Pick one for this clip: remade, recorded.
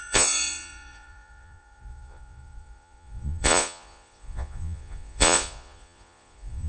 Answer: remade